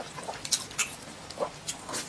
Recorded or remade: recorded